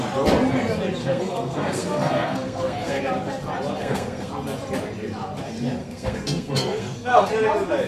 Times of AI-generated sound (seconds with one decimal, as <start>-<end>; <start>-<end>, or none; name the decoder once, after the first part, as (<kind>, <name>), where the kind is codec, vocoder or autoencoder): 1.0-3.0 (codec, SNAC); 3.8-4.3; 5.8-7.3